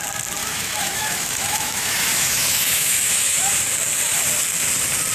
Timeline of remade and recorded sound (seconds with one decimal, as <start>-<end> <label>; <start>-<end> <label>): 0.0-0.4 recorded; 0.4-3.5 remade; 3.5-5.1 recorded